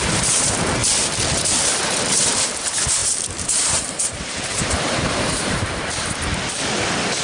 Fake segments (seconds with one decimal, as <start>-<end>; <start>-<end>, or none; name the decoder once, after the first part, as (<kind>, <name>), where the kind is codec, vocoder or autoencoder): 0.0-0.8 (vocoder, BigVGAN v2); 1.7-6.3